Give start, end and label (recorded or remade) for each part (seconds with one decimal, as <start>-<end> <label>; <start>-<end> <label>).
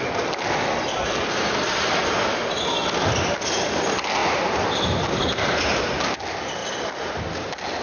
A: 0.0-7.8 recorded